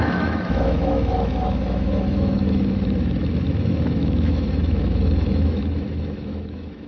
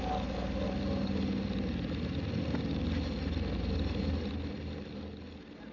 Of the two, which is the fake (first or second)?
first